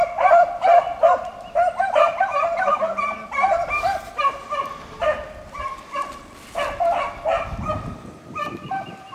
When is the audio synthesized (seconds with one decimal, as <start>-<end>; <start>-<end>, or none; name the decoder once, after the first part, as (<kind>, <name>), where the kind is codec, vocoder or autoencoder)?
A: 0.0-1.3 (vocoder, BigVGAN v2); 1.9-9.1